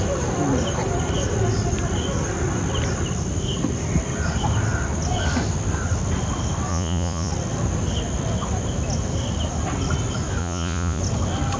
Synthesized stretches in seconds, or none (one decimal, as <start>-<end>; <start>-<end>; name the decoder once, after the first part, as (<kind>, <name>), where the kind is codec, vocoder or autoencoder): 6.7-7.3 (vocoder, Vocos); 10.4-11.0